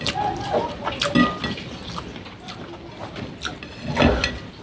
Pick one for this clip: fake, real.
real